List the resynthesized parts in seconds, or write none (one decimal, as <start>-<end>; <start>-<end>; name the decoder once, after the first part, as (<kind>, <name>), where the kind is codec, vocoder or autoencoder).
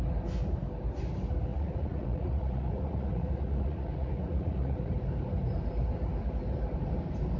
1.5-4.9 (vocoder, Vocos)